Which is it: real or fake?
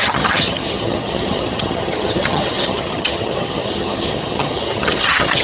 fake